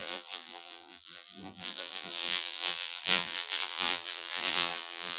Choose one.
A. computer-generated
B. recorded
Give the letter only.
A